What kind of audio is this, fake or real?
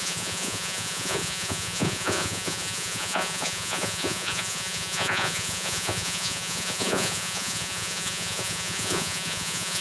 fake